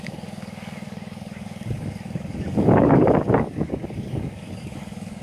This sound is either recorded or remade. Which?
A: remade